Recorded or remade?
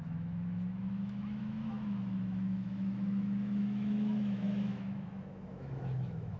remade